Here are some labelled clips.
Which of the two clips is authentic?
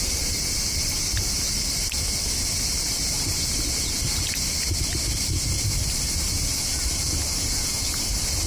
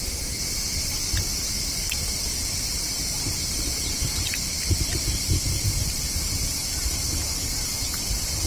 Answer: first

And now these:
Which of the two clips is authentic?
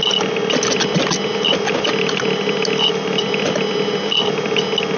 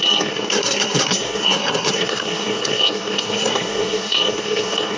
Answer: first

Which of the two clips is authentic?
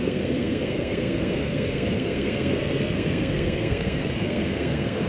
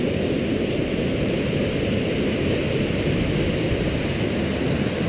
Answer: second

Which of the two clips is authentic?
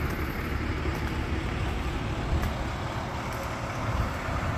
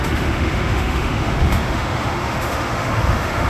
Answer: first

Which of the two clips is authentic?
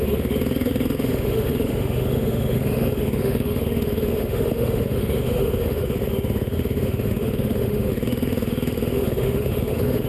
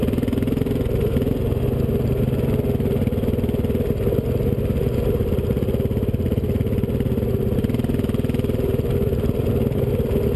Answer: second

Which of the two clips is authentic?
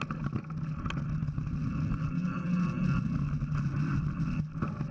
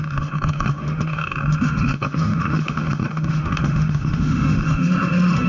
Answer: first